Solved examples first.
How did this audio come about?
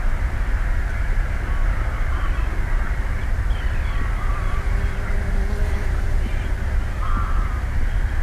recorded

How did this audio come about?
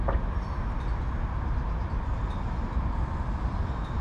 recorded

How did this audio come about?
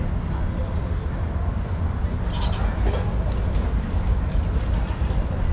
recorded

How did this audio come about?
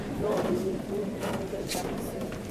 remade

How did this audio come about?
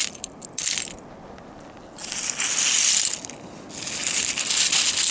recorded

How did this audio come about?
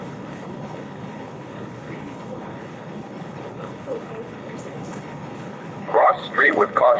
remade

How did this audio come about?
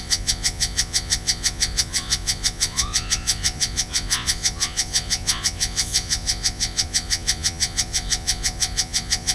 remade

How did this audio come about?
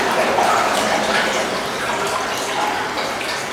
recorded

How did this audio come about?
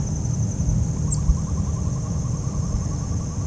recorded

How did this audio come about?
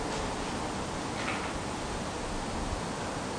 recorded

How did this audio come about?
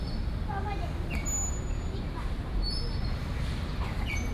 recorded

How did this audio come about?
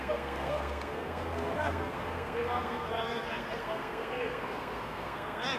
remade